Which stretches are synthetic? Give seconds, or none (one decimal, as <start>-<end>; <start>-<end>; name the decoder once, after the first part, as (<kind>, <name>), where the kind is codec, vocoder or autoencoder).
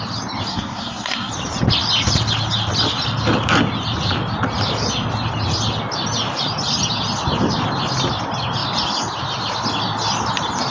0.5-1.3 (codec, SNAC)